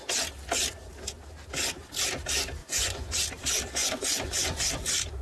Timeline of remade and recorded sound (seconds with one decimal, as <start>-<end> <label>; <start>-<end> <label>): 0.0-2.6 recorded; 2.6-3.2 remade; 3.2-3.8 recorded; 3.8-4.6 remade; 4.6-5.2 recorded